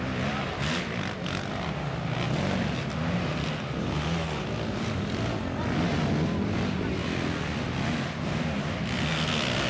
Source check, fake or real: real